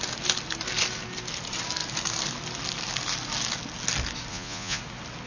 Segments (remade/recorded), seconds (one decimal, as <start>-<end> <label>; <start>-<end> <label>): 0.0-4.3 recorded; 4.3-4.8 remade; 4.8-5.3 recorded